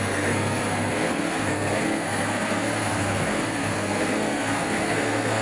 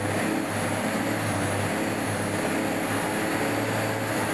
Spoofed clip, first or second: first